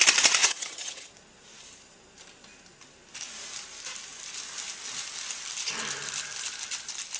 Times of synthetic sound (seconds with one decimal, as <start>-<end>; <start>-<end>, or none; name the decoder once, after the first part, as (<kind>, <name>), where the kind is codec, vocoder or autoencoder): 0.4-1.1 (vocoder, HiFi-GAN)